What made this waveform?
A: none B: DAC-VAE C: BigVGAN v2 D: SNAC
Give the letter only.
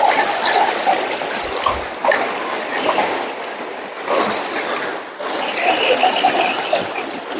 A